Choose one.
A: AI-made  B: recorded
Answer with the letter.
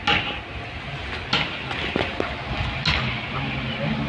B